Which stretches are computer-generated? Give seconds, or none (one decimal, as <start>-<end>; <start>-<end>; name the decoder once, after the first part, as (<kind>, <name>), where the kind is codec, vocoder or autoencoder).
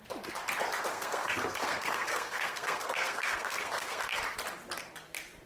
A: 0.9-4.2 (codec, SNAC)